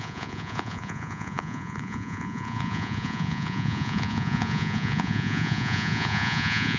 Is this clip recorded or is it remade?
remade